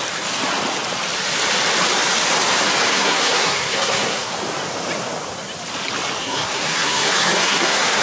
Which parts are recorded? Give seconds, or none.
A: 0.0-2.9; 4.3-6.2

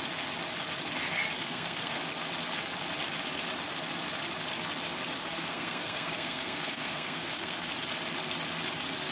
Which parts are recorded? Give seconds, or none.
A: 0.0-1.4; 2.0-5.2; 7.7-9.1

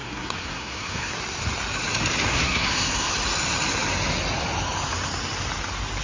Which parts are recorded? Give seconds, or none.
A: 1.1-2.3; 3.1-6.0

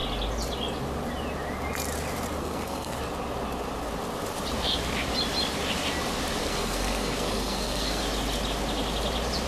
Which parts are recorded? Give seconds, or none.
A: 0.0-2.4; 3.0-6.4; 8.0-9.5

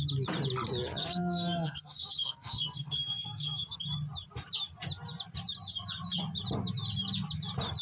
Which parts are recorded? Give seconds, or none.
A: 0.0-1.0; 3.8-7.8

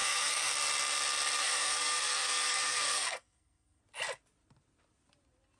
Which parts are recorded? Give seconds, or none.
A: 0.5-1.4; 3.8-5.6